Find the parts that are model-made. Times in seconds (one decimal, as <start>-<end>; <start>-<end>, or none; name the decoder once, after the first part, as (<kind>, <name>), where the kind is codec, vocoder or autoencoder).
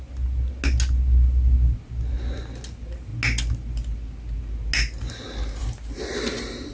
none